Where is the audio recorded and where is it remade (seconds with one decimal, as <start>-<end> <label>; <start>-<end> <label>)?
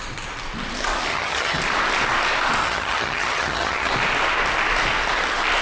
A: 0.0-1.1 recorded; 1.1-1.6 remade; 1.6-2.6 recorded; 2.6-3.9 remade; 3.9-5.6 recorded